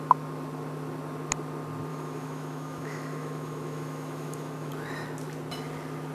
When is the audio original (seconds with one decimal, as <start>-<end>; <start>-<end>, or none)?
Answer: 0.0-1.9; 4.7-6.1